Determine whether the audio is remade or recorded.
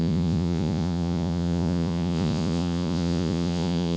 remade